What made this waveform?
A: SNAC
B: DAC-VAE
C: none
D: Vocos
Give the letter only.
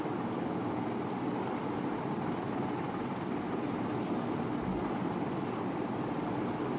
C